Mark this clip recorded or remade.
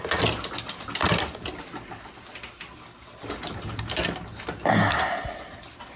recorded